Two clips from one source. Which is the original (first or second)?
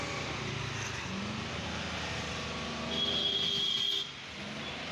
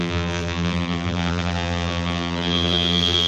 first